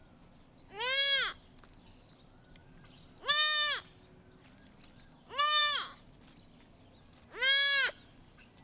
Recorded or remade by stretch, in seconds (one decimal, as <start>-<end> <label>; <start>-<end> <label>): 0.0-8.6 recorded